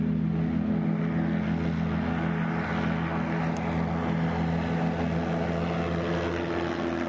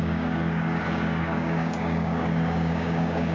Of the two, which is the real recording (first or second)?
first